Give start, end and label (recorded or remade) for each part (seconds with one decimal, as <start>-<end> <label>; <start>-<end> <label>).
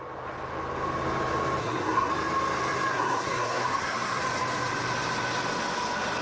0.0-1.6 recorded; 1.6-2.1 remade; 2.1-2.9 recorded; 2.9-4.2 remade; 4.2-6.2 recorded